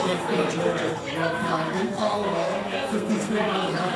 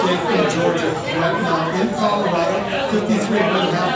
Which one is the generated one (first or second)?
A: first